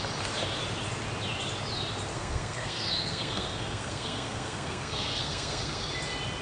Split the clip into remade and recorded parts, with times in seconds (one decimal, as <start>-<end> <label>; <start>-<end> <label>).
0.0-2.1 recorded; 2.1-5.9 remade; 5.9-6.4 recorded